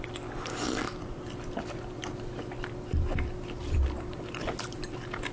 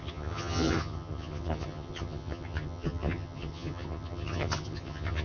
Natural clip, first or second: first